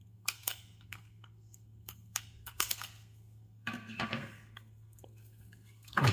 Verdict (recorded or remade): remade